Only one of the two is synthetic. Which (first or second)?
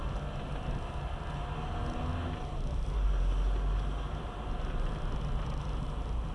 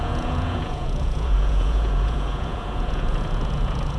second